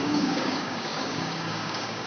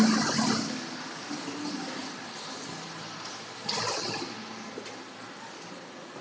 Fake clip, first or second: first